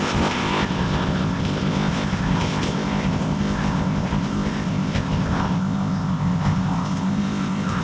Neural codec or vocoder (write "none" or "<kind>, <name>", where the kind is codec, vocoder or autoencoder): codec, ZipCodec